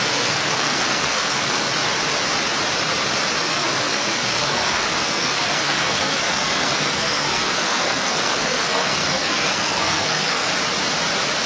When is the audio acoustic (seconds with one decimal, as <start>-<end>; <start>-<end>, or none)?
1.7-3.4; 10.5-11.5

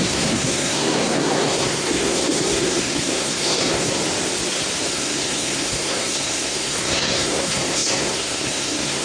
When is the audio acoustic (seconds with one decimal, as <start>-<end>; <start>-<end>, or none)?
4.0-4.9

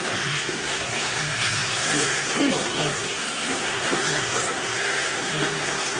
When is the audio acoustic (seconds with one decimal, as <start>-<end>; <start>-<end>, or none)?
none

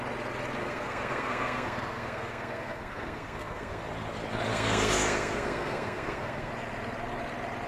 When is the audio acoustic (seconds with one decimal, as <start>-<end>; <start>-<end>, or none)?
0.0-0.6; 3.8-4.5; 6.5-7.7

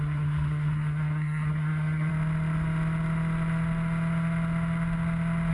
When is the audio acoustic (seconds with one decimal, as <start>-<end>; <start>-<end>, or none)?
2.1-5.5